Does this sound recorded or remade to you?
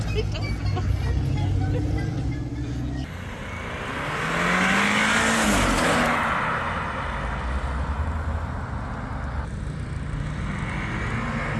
recorded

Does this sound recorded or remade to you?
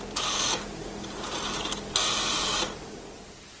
recorded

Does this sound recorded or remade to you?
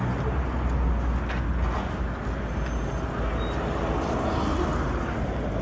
recorded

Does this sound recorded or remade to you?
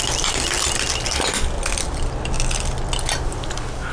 recorded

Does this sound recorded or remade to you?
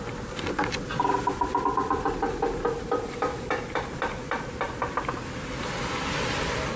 recorded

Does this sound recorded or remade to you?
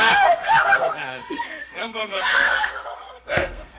remade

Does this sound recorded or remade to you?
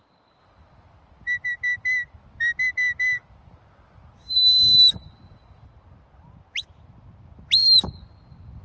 recorded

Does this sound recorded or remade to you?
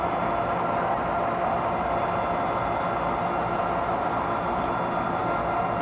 recorded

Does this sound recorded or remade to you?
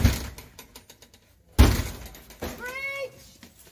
recorded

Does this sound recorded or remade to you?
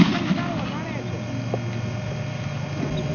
recorded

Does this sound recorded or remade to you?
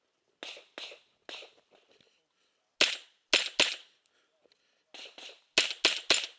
recorded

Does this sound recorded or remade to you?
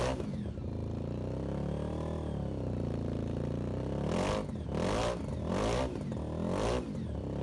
recorded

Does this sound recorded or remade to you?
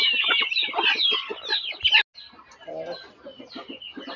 recorded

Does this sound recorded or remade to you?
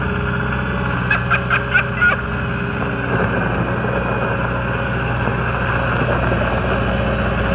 recorded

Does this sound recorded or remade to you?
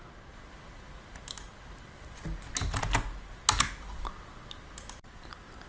recorded